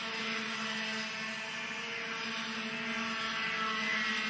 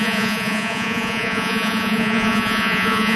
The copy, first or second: second